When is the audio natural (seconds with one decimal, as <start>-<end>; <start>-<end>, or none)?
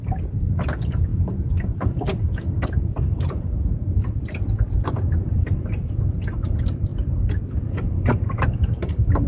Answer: 0.0-9.3